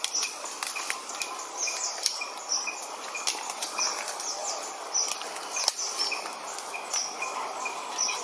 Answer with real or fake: real